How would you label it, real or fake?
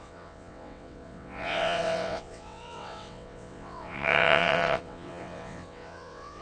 fake